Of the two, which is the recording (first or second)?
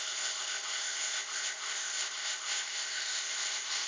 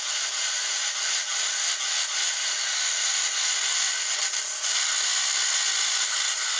second